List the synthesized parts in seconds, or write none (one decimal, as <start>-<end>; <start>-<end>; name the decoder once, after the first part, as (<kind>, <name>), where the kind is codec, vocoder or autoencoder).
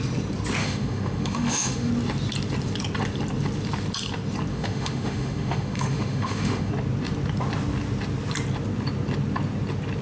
0.6-1.9 (autoencoder, DAC-VAE); 4.5-6.7